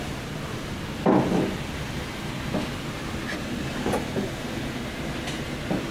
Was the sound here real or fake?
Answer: real